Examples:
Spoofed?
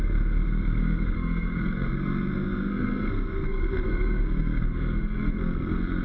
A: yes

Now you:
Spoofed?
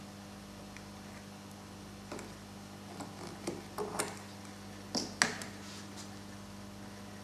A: no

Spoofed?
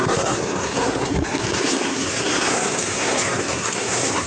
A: yes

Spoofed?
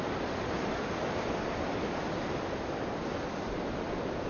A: no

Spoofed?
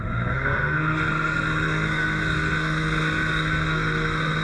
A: yes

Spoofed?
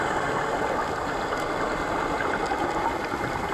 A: no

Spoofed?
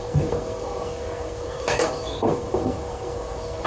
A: yes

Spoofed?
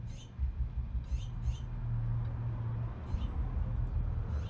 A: no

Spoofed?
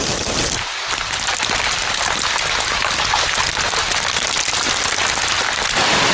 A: no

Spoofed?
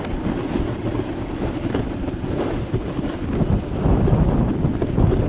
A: no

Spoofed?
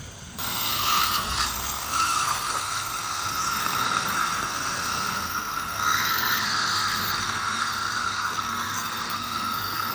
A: yes